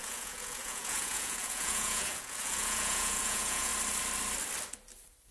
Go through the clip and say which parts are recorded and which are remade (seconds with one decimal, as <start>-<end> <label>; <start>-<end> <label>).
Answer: 0.0-3.7 remade; 3.7-5.3 recorded